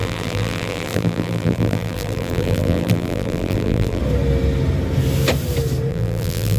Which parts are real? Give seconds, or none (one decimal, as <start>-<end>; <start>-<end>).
4.0-5.9